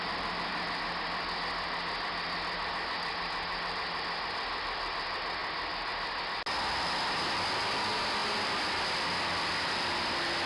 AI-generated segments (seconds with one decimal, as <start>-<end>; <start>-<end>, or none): 8.2-10.0

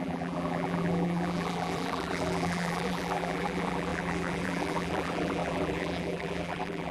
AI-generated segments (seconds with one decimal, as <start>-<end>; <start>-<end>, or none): 0.0-6.9

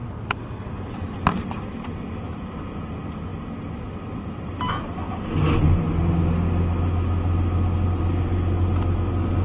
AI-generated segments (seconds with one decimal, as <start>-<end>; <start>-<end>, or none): 0.0-0.9

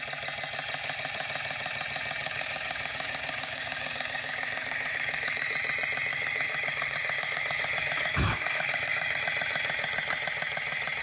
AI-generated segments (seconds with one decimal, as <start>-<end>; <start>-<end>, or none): 2.2-5.5; 6.1-9.2